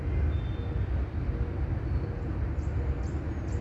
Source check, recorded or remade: recorded